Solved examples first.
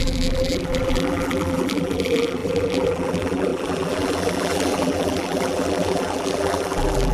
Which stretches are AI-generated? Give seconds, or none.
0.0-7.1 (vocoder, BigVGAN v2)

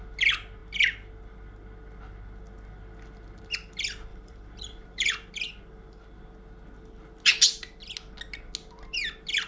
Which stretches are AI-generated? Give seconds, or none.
4.1-5.3 (vocoder, BigVGAN v2)

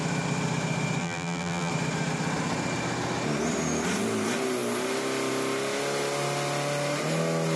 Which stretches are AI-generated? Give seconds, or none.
1.0-1.7 (vocoder, BigVGAN v2)

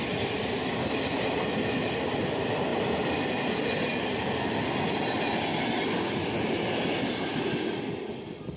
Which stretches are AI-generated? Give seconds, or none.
none

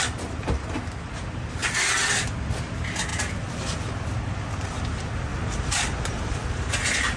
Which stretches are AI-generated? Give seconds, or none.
5.3-6.7 (vocoder, BigVGAN v2)

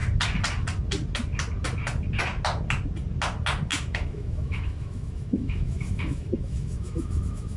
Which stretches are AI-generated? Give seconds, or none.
3.7-7.6 (autoencoder, DAC-VAE)